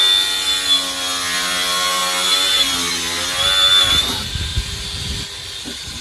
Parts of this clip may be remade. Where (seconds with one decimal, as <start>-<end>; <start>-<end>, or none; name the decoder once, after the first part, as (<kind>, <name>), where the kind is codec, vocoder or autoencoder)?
none